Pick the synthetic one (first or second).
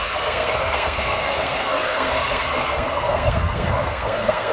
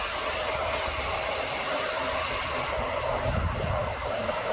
first